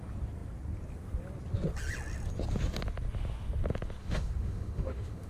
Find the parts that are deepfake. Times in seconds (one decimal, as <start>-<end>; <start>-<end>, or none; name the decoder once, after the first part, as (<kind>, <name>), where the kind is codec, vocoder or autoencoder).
4.0-5.3 (autoencoder, DAC-VAE)